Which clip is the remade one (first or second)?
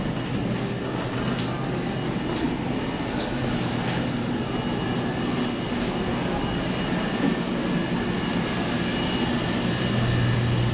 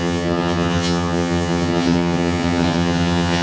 second